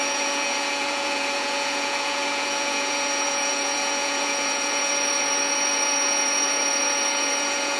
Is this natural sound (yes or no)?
no